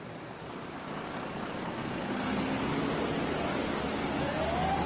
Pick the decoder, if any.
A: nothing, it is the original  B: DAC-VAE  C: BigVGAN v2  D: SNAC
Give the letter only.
A